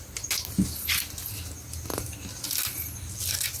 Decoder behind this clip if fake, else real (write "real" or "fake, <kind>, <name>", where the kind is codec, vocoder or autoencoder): real